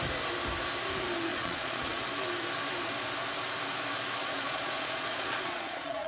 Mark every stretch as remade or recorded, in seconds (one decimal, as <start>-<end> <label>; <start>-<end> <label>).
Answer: 0.0-1.3 recorded; 1.3-2.0 remade; 2.0-4.2 recorded; 4.2-6.1 remade